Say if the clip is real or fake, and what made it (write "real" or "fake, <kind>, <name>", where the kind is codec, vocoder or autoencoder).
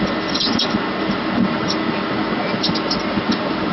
real